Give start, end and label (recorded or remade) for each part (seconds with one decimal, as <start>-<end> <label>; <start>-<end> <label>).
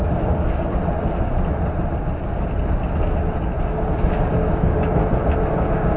0.0-0.7 remade; 0.7-4.3 recorded; 4.3-5.0 remade; 5.0-5.5 recorded; 5.5-6.0 remade